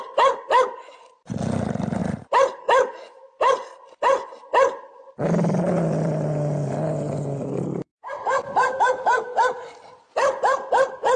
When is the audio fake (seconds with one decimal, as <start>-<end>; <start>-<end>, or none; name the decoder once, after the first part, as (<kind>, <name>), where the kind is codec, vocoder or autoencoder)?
none

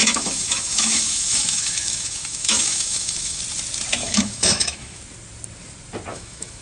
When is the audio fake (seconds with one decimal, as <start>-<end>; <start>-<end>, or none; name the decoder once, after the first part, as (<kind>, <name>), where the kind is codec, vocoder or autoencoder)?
0.0-3.4 (autoencoder, DAC-VAE); 4.0-5.0; 6.1-6.6

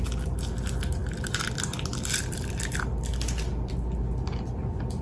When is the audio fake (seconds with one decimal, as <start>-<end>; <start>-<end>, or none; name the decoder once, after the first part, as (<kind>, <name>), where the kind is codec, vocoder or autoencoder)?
none

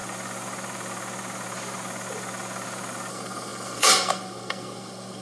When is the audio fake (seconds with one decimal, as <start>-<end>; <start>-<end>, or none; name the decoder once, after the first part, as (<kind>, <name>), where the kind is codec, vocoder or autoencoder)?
3.1-5.2 (codec, SNAC)

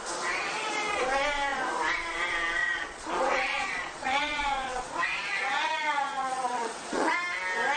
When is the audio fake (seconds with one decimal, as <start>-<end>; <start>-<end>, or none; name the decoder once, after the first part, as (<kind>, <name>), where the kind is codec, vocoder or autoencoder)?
0.4-1.0 (vocoder, Vocos); 2.6-7.1

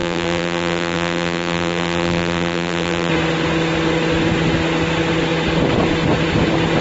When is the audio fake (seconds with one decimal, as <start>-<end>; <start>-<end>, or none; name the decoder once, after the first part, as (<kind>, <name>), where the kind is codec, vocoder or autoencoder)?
0.0-3.1 (vocoder, BigVGAN v2)